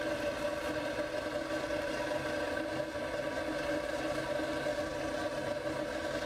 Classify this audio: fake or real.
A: real